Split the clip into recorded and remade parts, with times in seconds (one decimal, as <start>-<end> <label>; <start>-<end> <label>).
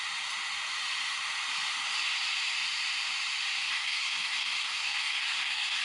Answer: 0.0-3.7 recorded; 3.7-5.8 remade